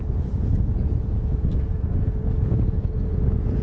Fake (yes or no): yes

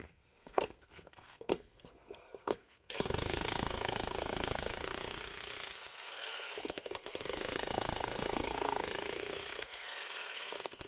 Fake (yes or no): yes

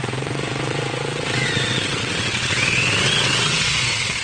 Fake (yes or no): yes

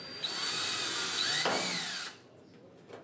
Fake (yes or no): no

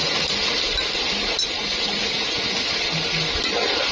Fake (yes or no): no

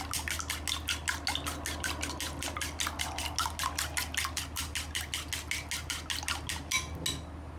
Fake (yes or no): no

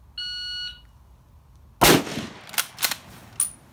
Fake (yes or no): no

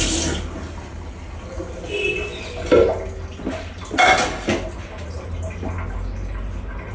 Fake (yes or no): no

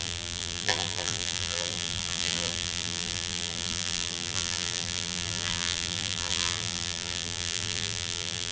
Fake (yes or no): yes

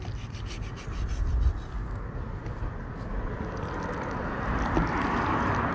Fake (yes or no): no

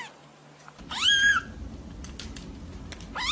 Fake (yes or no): no